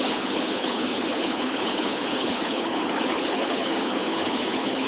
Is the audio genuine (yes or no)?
no